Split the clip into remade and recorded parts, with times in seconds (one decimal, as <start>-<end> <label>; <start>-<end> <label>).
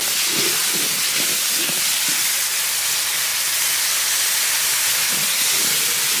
0.0-6.2 recorded